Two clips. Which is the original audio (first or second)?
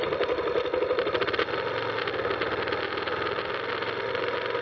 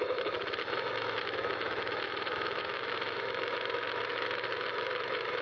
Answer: first